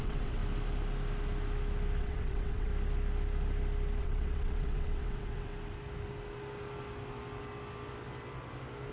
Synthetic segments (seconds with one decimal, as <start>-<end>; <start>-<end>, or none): 0.0-0.4; 2.0-2.7; 4.0-5.5